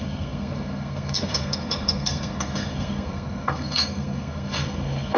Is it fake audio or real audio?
fake